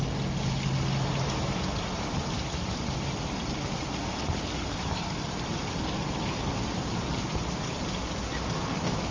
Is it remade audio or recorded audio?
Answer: recorded